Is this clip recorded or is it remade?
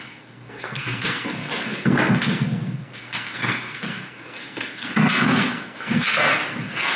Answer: remade